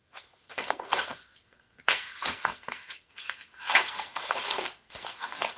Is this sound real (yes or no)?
no